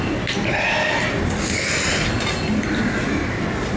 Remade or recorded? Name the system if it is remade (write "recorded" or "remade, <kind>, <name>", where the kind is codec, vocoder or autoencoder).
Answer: recorded